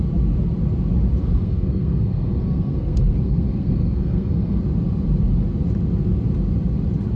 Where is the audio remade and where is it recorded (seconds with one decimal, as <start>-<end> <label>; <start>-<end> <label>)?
0.0-1.2 recorded; 1.2-4.6 remade; 4.6-7.2 recorded